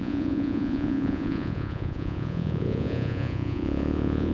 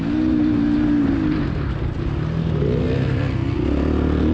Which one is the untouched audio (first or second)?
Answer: second